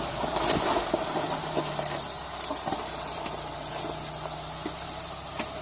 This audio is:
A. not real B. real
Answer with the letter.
A